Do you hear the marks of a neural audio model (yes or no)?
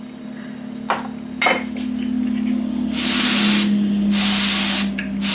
no